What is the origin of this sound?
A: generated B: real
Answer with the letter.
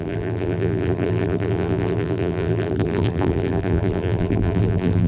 A